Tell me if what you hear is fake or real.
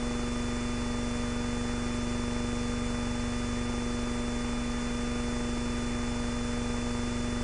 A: real